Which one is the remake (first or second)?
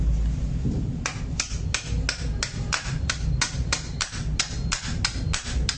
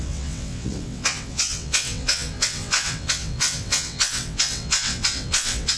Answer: second